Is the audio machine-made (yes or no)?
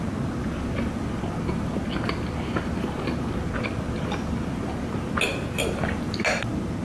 no